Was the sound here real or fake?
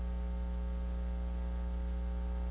real